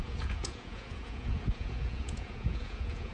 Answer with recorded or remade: remade